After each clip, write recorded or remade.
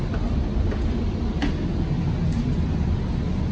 recorded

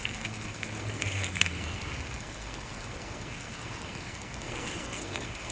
remade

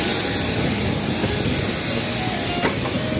recorded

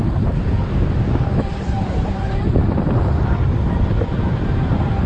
remade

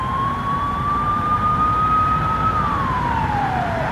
remade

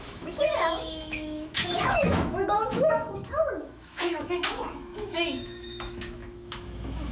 remade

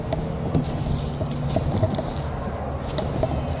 recorded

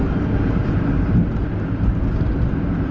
recorded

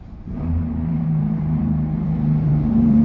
remade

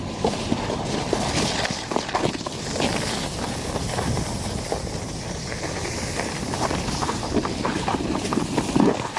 recorded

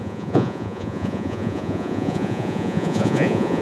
remade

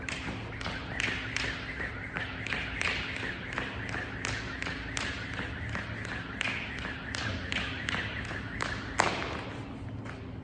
recorded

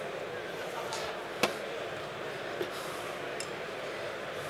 recorded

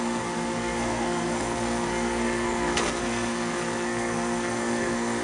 remade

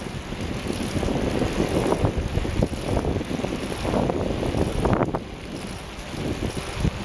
recorded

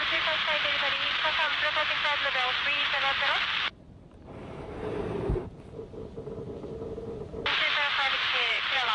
remade